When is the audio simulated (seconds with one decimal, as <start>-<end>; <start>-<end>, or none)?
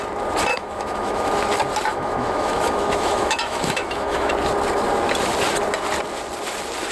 0.5-1.3; 1.9-4.3